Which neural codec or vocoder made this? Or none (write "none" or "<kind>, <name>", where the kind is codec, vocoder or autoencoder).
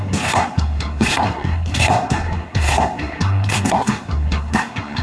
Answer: codec, SNAC